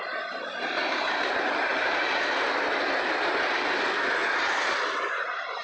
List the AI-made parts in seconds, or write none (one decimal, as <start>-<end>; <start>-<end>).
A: 1.7-3.2